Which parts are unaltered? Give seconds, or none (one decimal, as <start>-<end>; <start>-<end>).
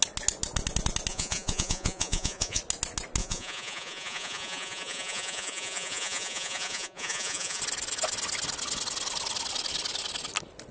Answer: 0.0-1.1; 2.6-3.2; 7.6-10.7